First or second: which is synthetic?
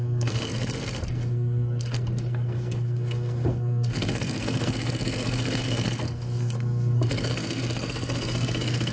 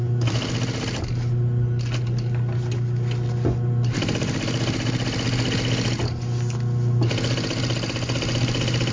first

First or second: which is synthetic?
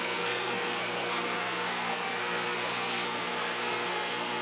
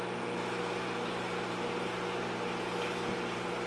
first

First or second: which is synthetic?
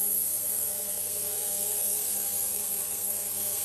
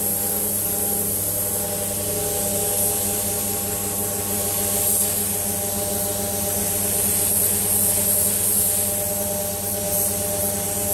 first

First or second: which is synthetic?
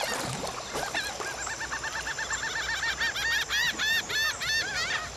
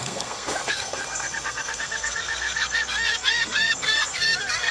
second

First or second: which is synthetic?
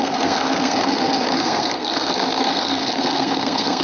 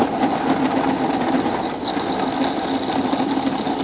first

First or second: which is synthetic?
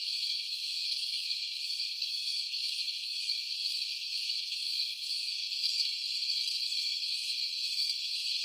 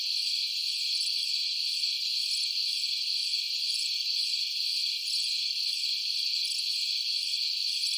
first